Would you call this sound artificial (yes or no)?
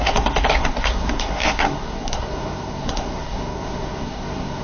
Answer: yes